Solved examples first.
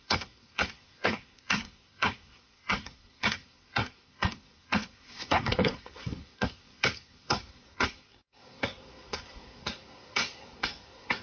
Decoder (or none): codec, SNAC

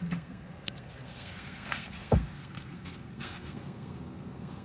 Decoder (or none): codec, SNAC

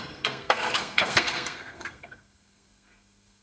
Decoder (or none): codec, SNAC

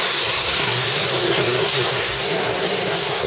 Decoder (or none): codec, SNAC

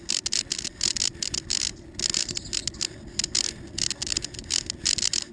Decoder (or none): none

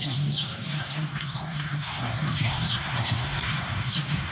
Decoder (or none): codec, SNAC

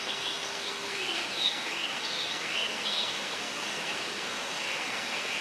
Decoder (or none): codec, SNAC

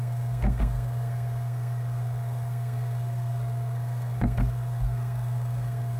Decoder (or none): codec, SNAC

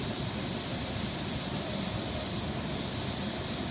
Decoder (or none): none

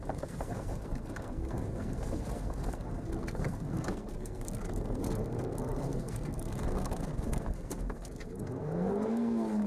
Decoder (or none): codec, SNAC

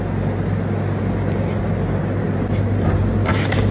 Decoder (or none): none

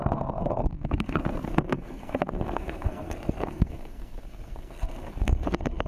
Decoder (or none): codec, SNAC